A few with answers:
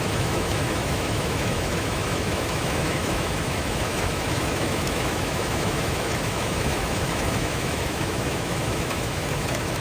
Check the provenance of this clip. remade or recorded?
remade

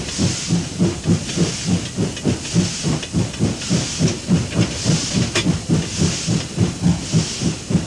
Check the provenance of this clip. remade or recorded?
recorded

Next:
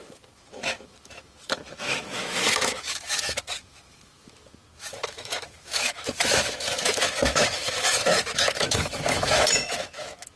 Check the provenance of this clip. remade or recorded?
remade